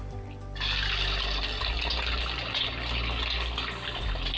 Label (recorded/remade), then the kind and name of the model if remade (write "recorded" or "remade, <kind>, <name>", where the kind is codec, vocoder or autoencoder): recorded